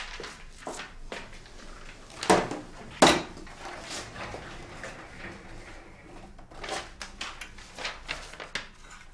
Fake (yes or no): no